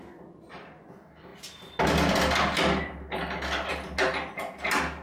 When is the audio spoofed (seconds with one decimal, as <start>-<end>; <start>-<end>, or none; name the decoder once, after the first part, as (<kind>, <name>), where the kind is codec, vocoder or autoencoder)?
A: none